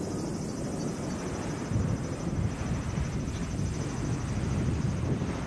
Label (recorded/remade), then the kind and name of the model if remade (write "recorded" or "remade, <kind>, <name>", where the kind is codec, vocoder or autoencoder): recorded